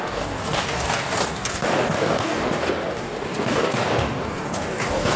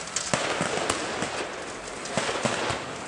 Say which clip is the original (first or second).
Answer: second